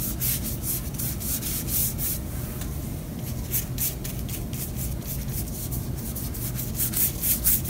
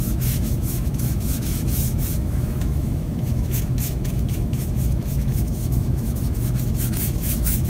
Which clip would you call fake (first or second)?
second